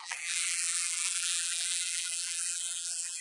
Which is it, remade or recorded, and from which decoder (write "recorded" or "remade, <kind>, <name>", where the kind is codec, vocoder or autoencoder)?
remade, vocoder, BigVGAN v2